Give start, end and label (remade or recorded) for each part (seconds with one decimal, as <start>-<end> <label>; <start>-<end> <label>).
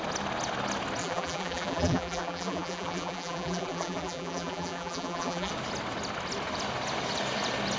0.0-1.0 recorded; 1.0-5.5 remade; 5.5-7.8 recorded